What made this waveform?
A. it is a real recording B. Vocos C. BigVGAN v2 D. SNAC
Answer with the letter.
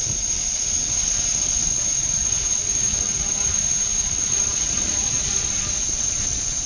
B